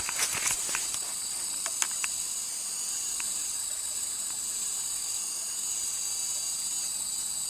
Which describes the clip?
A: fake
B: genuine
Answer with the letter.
B